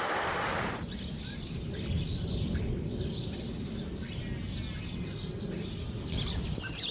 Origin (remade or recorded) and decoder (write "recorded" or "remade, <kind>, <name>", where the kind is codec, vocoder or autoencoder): recorded